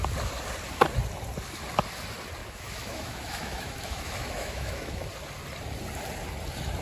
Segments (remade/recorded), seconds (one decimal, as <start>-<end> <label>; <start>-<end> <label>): 0.0-2.4 recorded; 2.4-5.1 remade; 5.1-6.8 recorded